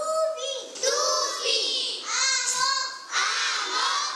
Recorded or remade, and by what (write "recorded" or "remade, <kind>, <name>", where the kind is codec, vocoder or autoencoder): recorded